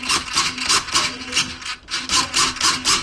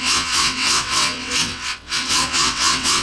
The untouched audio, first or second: first